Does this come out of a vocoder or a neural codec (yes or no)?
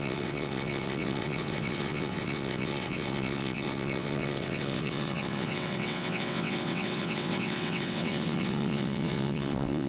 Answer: yes